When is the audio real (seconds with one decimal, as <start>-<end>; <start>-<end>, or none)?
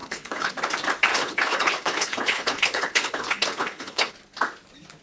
0.5-1.1; 4.1-5.0